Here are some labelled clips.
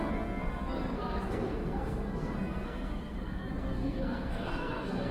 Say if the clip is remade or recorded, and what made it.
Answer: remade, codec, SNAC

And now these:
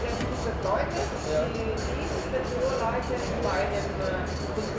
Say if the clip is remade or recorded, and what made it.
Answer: recorded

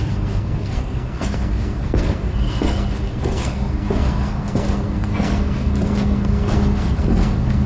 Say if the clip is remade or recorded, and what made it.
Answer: remade, codec, SNAC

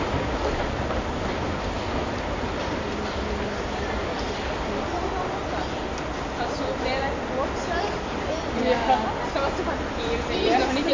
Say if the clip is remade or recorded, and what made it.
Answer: recorded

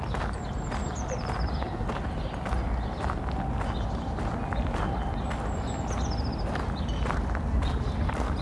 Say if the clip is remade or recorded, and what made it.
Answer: recorded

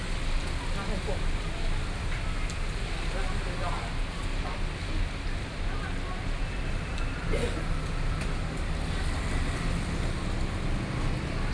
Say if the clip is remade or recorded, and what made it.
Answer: recorded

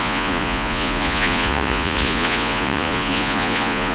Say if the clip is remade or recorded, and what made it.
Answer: remade, vocoder, Vocos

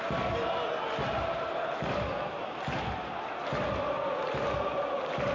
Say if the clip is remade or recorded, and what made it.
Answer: recorded